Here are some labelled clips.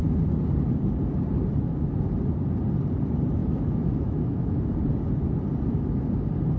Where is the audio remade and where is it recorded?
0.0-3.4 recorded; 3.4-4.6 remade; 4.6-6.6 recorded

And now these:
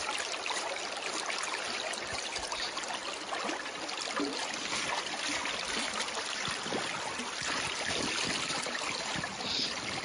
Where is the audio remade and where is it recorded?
0.0-10.0 recorded

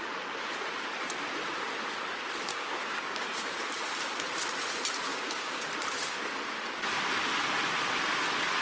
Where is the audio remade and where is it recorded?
0.0-2.5 recorded; 2.5-3.6 remade; 3.6-5.1 recorded; 5.1-5.7 remade; 5.7-8.6 recorded

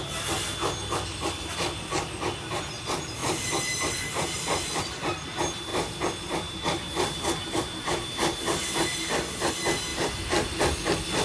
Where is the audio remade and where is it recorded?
0.0-3.2 recorded; 3.2-4.8 remade; 4.8-5.7 recorded; 5.7-9.5 remade; 9.5-9.9 recorded; 9.9-10.6 remade; 10.6-11.2 recorded

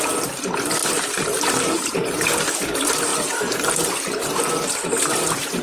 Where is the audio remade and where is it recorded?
0.0-0.8 recorded; 0.8-2.3 remade; 2.3-3.1 recorded; 3.1-3.7 remade; 3.7-5.6 recorded

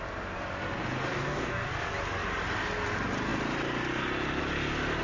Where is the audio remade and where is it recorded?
0.0-1.1 recorded; 1.1-1.7 remade; 1.7-5.0 recorded

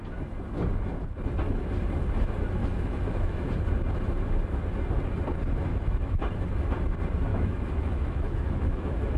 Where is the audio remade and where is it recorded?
0.0-2.6 recorded; 2.6-3.5 remade; 3.5-5.7 recorded; 5.7-6.2 remade; 6.2-7.3 recorded; 7.3-9.2 remade

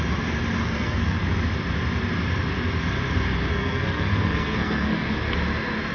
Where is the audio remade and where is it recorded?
0.0-0.6 recorded; 0.6-1.2 remade; 1.2-3.5 recorded; 3.5-5.1 remade; 5.1-5.9 recorded